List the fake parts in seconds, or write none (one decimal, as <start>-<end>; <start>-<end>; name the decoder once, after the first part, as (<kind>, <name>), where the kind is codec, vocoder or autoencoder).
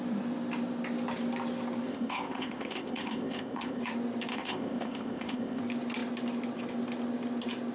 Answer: 1.9-3.8 (codec, ZipCodec); 4.3-5.6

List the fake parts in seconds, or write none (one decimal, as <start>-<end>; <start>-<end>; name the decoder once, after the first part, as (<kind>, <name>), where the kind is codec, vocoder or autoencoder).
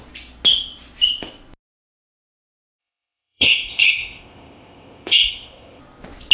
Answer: 2.8-5.8 (codec, ZipCodec)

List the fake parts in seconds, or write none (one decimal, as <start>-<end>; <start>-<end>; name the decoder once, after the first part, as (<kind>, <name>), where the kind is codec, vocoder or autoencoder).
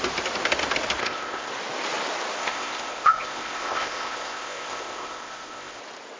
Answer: 1.0-1.5 (codec, ZipCodec); 2.4-5.8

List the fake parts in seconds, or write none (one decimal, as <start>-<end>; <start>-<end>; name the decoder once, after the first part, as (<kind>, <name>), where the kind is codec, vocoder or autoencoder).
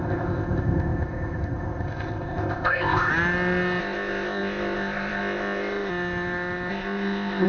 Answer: 0.0-3.1 (codec, ZipCodec); 3.8-5.9; 6.7-7.5